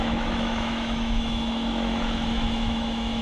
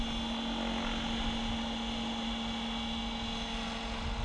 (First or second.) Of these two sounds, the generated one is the first